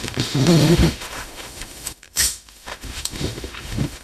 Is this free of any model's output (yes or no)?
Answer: no